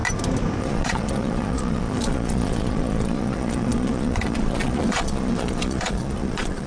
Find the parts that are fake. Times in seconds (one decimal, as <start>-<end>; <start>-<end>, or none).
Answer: 0.6-6.7